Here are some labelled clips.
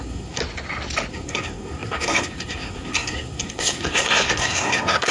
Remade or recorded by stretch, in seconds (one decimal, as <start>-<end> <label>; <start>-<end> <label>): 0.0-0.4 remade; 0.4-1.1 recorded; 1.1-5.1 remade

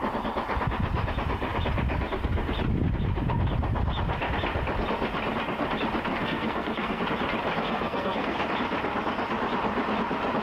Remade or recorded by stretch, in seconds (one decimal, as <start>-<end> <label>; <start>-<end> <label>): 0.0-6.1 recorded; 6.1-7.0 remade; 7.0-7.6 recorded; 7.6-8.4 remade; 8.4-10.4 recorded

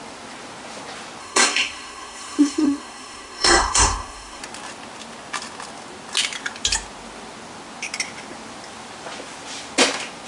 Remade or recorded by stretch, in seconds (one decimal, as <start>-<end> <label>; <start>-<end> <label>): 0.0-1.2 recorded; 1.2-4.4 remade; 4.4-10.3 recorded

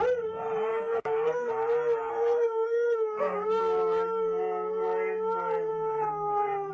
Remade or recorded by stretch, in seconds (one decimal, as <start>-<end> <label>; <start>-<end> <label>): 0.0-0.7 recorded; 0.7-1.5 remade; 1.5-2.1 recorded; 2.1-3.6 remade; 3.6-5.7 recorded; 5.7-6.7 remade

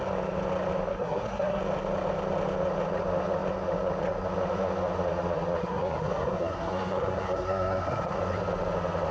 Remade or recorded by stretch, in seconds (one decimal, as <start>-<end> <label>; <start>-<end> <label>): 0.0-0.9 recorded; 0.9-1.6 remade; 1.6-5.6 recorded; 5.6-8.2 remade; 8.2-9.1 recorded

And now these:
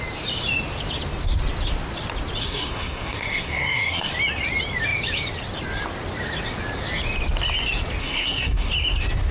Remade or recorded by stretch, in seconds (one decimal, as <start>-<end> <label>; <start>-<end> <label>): 0.0-2.4 recorded; 2.4-4.1 remade; 4.1-8.0 recorded; 8.0-8.7 remade; 8.7-9.3 recorded

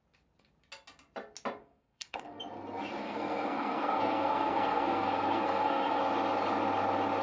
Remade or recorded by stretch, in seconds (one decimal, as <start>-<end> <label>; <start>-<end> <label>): 0.0-1.6 recorded; 1.6-2.4 remade; 2.4-3.0 recorded; 3.0-6.0 remade; 6.0-7.2 recorded

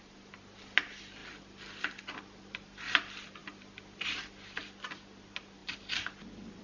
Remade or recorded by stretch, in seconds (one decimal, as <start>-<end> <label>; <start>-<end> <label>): 0.0-6.6 recorded